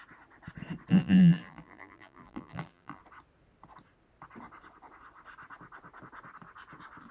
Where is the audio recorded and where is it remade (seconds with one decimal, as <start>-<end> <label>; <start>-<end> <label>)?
0.0-0.9 recorded; 0.9-3.0 remade; 3.0-7.1 recorded